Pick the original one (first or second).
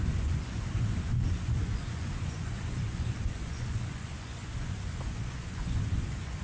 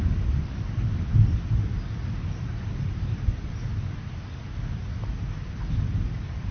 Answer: second